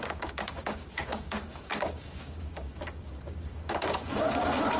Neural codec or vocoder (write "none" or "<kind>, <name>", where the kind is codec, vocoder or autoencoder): codec, DAC